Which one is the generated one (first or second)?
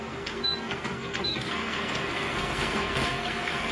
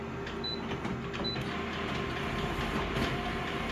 first